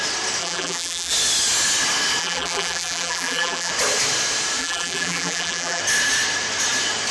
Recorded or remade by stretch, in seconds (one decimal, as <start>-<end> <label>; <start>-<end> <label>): 0.0-0.4 recorded; 0.4-1.1 remade; 1.1-2.2 recorded; 2.2-3.7 remade; 3.7-4.6 recorded; 4.6-5.8 remade; 5.8-7.1 recorded